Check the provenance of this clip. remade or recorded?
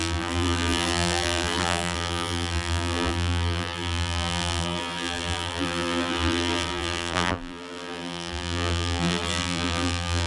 remade